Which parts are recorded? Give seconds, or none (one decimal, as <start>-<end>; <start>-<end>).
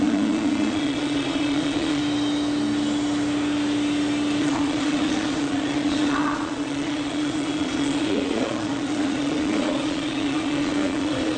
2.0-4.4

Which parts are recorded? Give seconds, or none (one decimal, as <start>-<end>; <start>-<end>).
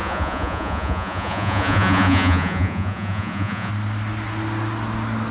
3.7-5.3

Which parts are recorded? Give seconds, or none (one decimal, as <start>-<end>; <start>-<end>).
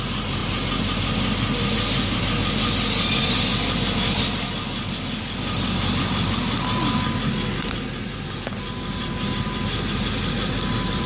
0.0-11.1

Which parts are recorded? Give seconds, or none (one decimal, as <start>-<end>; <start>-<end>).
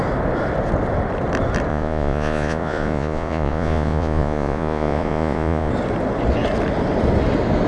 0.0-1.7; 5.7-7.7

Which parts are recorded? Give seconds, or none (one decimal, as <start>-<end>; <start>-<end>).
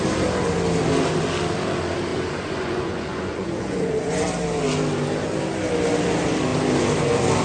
0.0-2.1; 4.2-7.4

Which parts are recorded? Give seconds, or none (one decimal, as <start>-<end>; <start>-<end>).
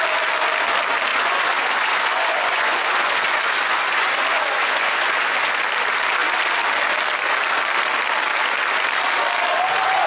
0.0-1.1; 5.6-10.1